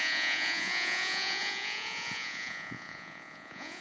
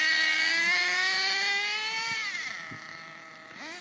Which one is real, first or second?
second